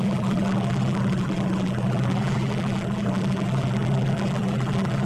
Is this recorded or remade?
remade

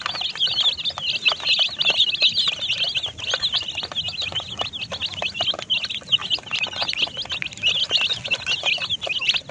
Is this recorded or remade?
recorded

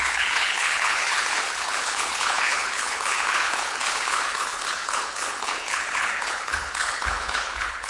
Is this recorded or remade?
remade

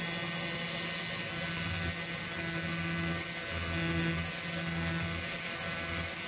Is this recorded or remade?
recorded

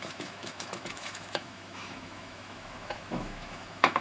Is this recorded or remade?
remade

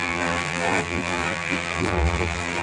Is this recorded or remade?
remade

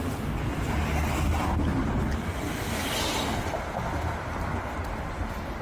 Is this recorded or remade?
recorded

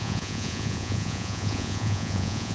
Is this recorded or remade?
remade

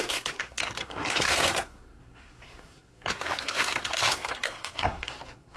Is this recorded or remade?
remade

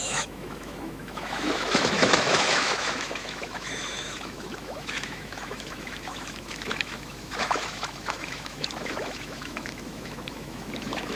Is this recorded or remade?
remade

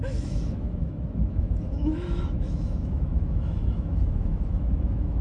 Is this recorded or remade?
remade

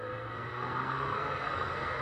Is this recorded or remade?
remade